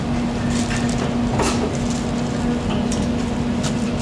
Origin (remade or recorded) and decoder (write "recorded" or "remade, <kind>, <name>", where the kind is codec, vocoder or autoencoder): recorded